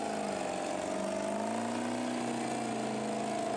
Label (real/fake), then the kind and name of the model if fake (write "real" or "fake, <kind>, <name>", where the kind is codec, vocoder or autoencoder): real